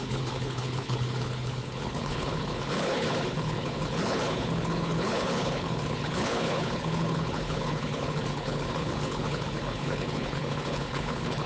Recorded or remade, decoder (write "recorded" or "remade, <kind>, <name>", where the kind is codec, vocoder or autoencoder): remade, codec, HILCodec